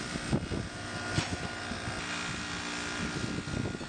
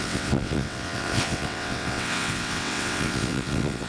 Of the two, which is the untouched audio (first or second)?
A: first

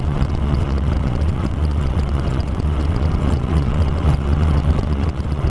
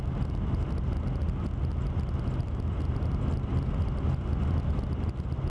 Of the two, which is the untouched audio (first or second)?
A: second